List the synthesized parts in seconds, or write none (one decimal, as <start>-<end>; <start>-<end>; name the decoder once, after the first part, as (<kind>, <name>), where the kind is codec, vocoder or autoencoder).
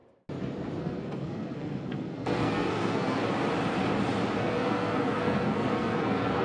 0.8-3.2 (codec, SNAC); 4.4-6.4